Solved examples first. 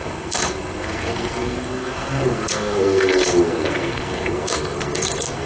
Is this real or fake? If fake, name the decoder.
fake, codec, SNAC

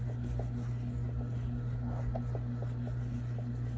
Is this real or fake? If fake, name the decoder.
real